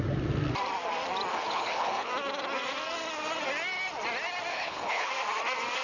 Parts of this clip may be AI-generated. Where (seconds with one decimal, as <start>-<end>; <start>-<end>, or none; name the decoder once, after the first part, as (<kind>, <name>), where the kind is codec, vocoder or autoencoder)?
1.3-2.1 (codec, HILCodec); 4.5-5.1